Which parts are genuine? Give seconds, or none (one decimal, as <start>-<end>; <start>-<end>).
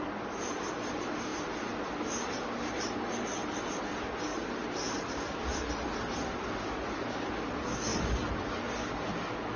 0.0-4.3; 6.5-7.9; 8.5-9.6